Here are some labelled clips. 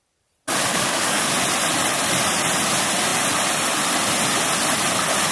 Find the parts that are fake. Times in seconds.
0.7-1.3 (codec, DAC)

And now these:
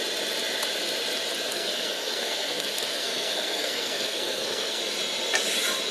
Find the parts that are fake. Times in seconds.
1.5-4.8 (codec, SNAC)

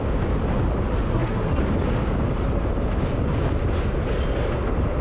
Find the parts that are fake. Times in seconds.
1.1-1.6 (codec, SNAC)

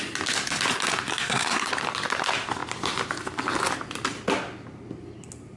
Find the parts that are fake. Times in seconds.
1.1-1.7 (codec, SNAC)

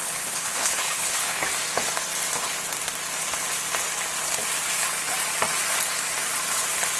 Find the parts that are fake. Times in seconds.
0.0-1.4 (codec, HILCodec)